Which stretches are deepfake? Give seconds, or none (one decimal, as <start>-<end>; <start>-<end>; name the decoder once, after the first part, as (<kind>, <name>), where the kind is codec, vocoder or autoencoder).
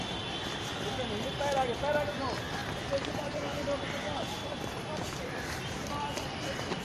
2.6-6.8 (vocoder, BigVGAN v2)